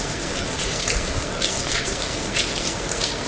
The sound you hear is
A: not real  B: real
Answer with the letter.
A